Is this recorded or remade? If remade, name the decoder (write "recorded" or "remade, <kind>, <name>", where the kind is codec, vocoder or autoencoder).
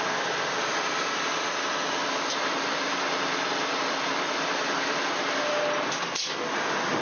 recorded